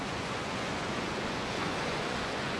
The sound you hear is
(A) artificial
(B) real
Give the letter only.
A